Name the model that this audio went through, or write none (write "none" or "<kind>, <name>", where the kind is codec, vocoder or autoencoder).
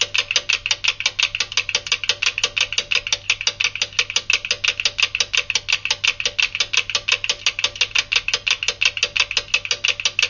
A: none